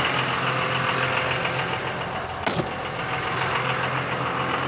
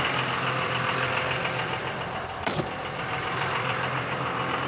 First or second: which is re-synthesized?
second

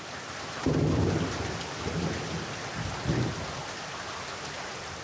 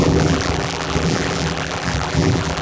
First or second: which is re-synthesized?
second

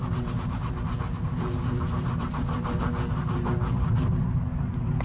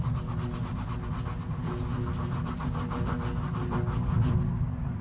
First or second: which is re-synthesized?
first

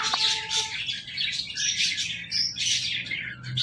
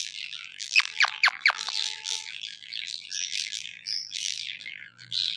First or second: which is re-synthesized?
second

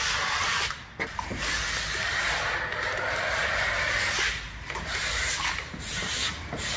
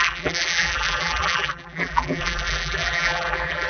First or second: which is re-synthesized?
second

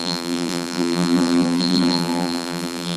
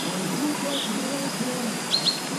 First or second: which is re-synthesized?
first